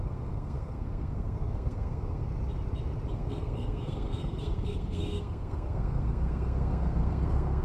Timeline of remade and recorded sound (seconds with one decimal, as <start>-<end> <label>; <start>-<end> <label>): 0.0-2.3 remade; 2.3-3.1 recorded; 3.1-7.6 remade